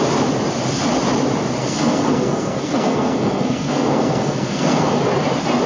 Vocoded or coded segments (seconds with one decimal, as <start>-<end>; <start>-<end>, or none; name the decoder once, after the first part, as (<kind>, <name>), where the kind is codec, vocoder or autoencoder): 1.6-5.0 (codec, SNAC)